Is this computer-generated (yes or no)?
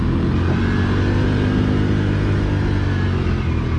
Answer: no